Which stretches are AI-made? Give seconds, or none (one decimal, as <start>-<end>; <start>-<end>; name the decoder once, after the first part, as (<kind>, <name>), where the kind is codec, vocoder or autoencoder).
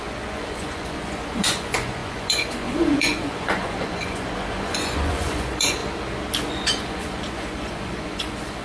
0.0-5.8 (vocoder, Vocos); 6.5-8.6